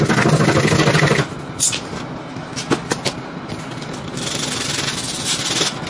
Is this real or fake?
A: real